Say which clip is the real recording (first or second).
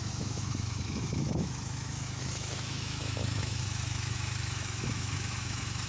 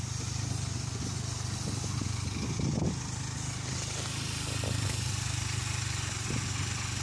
second